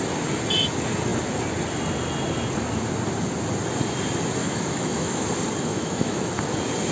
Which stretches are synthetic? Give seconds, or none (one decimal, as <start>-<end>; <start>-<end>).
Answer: 4.4-5.3; 5.7-6.3